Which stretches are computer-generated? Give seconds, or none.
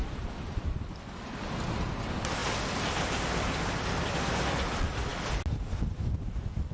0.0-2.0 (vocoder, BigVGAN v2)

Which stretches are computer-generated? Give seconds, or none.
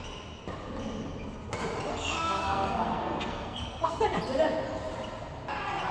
1.9-4.0 (codec, SNAC)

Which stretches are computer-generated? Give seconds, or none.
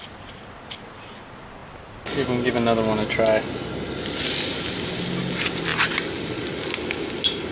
none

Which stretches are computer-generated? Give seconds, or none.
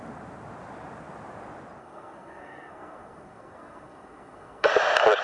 1.8-4.7 (codec, SNAC)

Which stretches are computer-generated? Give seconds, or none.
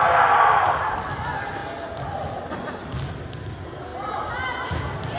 none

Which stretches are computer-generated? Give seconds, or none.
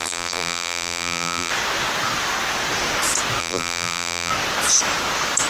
0.0-1.5 (vocoder, BigVGAN v2); 3.4-4.3